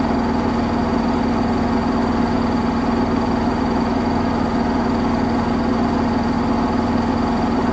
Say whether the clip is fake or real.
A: real